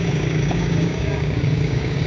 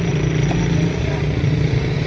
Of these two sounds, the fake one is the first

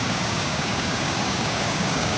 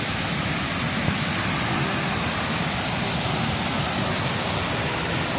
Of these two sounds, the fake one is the first